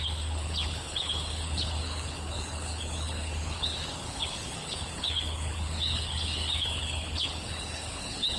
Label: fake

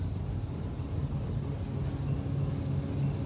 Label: real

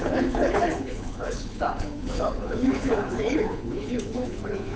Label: fake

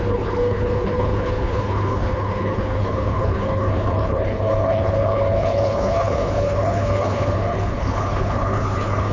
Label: fake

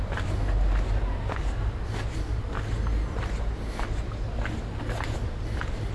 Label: real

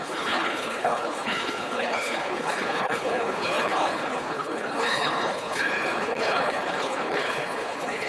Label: fake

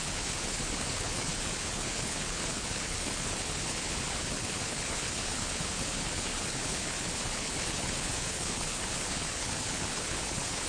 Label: fake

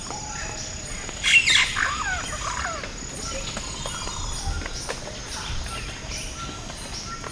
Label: real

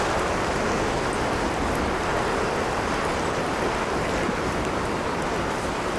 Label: real